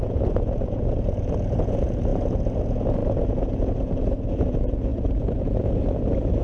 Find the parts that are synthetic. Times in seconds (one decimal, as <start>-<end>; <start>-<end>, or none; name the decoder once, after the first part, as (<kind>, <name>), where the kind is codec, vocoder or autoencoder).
0.0-6.4 (vocoder, Vocos)